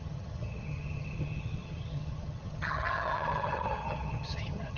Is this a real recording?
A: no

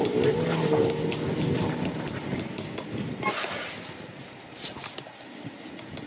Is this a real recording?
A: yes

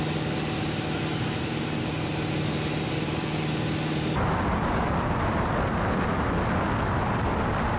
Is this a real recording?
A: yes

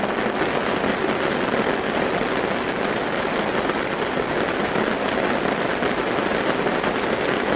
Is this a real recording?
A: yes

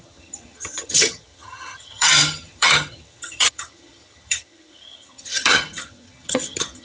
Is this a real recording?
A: no